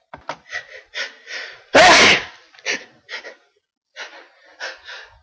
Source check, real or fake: real